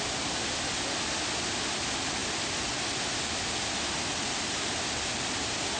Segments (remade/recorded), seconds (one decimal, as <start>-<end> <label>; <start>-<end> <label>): 0.0-5.8 recorded